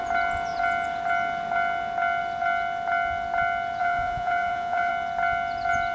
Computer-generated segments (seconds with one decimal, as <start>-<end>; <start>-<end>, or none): 3.8-4.9